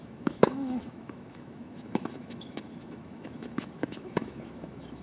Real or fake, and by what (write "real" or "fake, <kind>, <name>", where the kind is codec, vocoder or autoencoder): fake, autoencoder, DAC-VAE